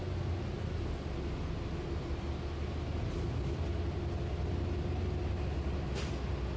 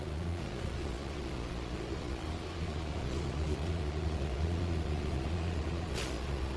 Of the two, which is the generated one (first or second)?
second